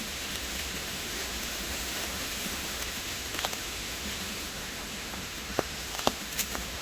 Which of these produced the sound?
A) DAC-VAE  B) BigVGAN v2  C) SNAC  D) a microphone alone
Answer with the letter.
A